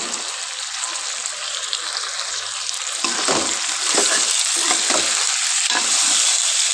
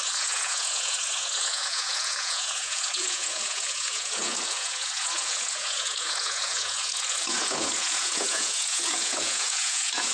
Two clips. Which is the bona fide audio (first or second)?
first